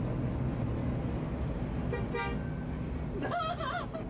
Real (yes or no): yes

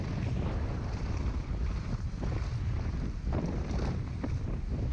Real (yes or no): yes